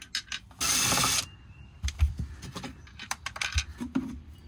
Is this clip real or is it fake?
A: real